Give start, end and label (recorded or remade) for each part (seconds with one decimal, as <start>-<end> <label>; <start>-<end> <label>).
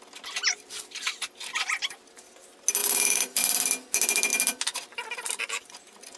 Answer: 0.0-2.8 recorded; 2.8-3.4 remade; 3.4-6.2 recorded